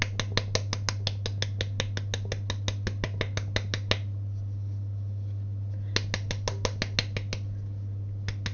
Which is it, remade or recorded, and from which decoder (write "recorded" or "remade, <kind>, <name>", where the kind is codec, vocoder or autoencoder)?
recorded